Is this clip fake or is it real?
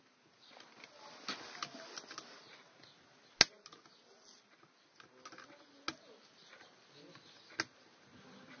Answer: real